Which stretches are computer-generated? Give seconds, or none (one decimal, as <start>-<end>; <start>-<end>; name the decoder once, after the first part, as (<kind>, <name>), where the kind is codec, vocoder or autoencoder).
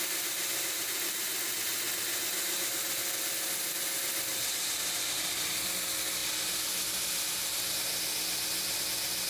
4.3-5.6 (vocoder, BigVGAN v2)